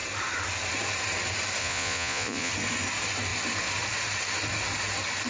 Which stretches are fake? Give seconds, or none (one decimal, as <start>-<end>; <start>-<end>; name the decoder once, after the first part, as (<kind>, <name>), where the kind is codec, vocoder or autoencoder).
1.6-2.5 (vocoder, Vocos)